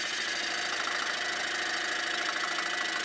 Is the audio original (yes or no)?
yes